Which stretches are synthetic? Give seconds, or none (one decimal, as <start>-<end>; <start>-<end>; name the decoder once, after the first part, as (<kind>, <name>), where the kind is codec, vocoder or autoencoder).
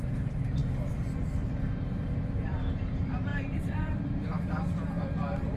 0.0-0.6 (vocoder, BigVGAN v2); 1.5-5.6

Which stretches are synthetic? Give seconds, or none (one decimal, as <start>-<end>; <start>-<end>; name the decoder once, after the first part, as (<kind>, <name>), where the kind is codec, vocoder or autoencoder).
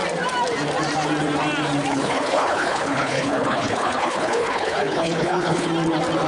1.9-5.7 (codec, HILCodec)